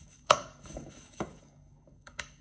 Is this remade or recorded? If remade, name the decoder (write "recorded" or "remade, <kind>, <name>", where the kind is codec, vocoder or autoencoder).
remade, codec, DAC